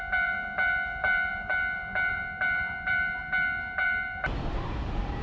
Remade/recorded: remade